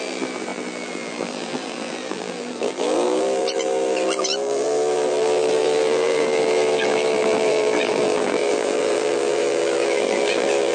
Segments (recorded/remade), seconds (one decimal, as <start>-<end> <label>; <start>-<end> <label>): 0.0-10.7 remade